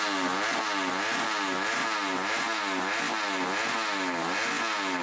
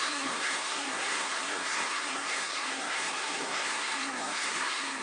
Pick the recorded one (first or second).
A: first